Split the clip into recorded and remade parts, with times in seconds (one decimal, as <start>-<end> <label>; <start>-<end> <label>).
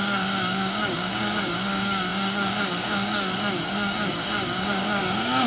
0.0-5.5 remade